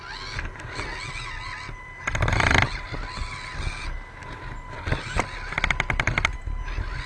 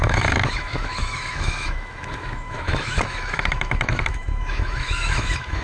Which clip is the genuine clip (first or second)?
first